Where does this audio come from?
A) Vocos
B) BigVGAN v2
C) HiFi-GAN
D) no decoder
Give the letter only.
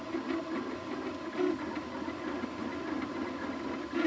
D